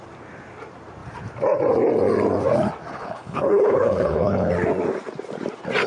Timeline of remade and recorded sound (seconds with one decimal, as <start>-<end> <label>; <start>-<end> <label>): 0.0-2.9 recorded; 2.9-4.5 remade; 4.5-5.9 recorded